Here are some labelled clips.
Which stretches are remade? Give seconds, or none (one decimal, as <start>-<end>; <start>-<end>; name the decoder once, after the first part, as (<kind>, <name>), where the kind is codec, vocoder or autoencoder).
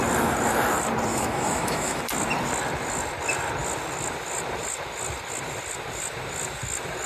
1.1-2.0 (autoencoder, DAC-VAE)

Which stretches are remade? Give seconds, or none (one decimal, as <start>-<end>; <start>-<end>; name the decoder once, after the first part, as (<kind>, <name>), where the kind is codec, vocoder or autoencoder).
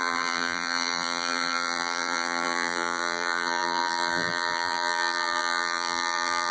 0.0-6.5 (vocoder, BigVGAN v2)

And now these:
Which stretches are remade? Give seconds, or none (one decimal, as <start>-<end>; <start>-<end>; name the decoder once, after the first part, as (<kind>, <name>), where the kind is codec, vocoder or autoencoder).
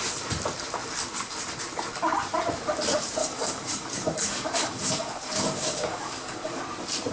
3.2-6.6 (codec, DAC)